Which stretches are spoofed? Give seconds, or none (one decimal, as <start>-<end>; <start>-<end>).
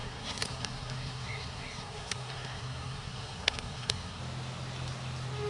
0.0-4.2